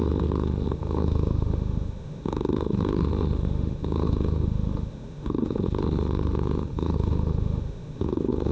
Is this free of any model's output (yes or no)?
no